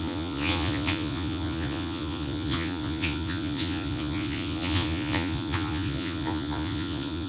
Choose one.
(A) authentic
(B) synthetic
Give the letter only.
B